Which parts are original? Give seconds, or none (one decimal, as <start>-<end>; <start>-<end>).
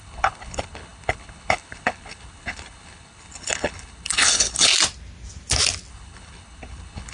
4.7-5.9